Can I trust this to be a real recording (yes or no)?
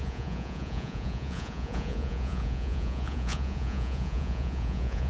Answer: no